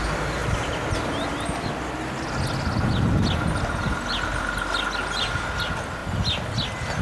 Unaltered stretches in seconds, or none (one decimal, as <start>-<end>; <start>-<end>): 0.0-7.0